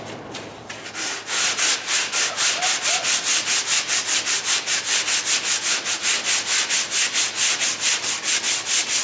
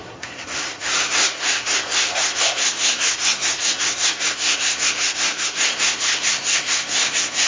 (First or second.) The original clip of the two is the first